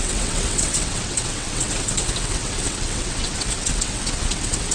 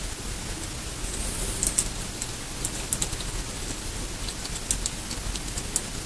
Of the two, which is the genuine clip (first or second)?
second